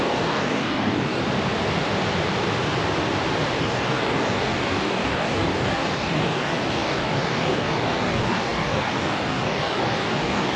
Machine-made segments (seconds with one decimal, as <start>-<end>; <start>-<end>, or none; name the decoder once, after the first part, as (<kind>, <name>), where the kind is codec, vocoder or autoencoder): 0.0-1.2 (codec, DAC); 3.6-10.6